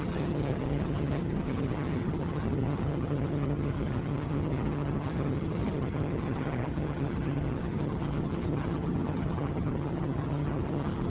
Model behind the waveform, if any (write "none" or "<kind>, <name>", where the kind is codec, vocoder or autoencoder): vocoder, HiFi-GAN